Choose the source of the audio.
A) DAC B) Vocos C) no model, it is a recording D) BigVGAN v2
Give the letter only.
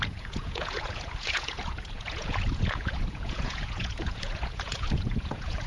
B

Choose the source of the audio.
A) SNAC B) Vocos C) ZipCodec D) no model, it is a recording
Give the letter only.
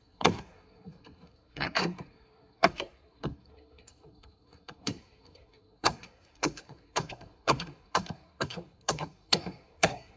A